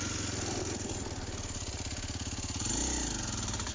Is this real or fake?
real